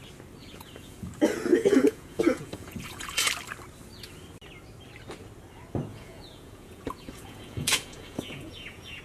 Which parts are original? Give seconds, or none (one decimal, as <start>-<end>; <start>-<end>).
0.0-0.4; 1.1-1.5; 3.3-5.9